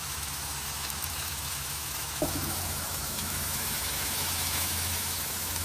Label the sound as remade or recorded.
remade